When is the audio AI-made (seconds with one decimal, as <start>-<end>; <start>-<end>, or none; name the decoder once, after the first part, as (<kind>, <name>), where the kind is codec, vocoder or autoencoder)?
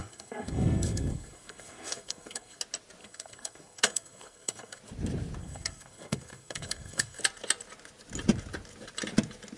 0.0-2.6 (codec, SNAC); 3.0-4.8; 5.4-7.2